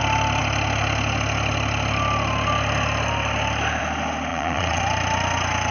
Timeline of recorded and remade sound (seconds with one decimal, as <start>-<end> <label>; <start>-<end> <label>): 0.0-4.3 recorded; 4.3-4.8 remade; 4.8-5.7 recorded